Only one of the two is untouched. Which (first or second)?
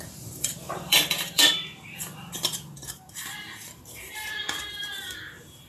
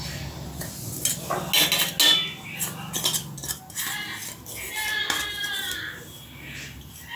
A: second